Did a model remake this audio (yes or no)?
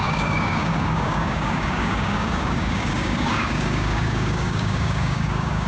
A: yes